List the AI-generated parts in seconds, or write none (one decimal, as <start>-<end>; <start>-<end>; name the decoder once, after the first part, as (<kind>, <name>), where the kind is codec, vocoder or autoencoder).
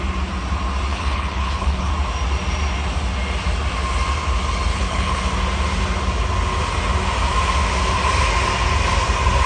0.9-1.9 (codec, HILCodec); 4.7-5.2